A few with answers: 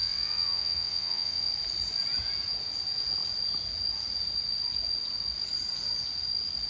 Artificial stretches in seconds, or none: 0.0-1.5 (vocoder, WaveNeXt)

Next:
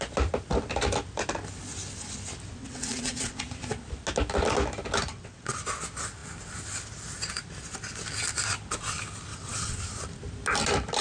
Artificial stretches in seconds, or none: 2.6-3.4 (vocoder, WaveNeXt); 5.1-5.6; 9.3-9.8

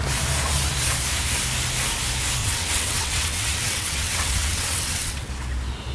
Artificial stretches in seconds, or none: 2.4-5.3 (vocoder, WaveNeXt)